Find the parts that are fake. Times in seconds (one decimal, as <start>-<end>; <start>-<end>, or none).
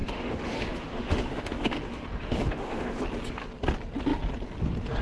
0.0-3.0